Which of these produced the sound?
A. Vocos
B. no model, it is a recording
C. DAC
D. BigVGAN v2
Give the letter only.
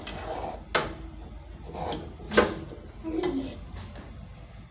B